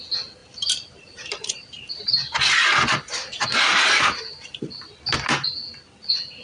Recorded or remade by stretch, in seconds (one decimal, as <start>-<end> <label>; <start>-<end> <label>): 0.0-0.4 recorded; 0.4-4.2 remade; 4.2-6.4 recorded